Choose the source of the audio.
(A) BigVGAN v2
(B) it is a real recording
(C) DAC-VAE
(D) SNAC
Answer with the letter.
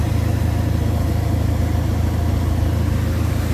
B